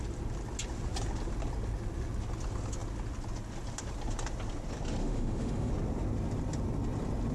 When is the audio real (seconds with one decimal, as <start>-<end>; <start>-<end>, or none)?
0.0-5.0; 5.7-7.3